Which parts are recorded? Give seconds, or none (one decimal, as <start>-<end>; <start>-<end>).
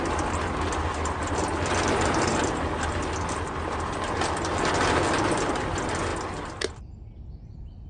0.0-7.9